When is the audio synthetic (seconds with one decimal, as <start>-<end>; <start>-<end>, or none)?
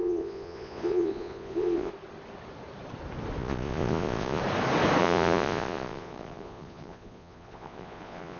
0.0-1.9; 3.4-4.4; 5.0-8.4